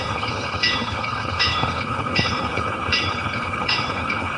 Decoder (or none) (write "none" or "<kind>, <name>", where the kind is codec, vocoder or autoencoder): codec, HILCodec